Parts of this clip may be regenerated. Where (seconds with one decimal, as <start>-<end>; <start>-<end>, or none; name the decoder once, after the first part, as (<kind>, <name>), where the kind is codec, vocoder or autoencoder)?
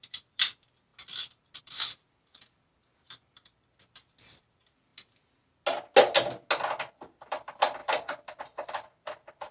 0.0-0.9 (vocoder, BigVGAN v2); 1.6-4.9; 6.8-9.5